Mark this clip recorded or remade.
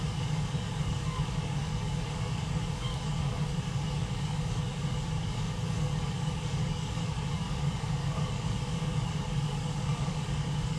remade